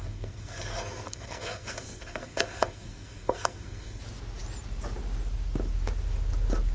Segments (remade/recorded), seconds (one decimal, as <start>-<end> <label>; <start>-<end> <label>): 0.0-4.0 remade; 4.0-6.7 recorded